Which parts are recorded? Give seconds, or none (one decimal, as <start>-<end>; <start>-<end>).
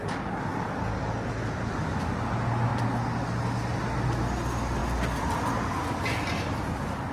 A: 0.0-7.1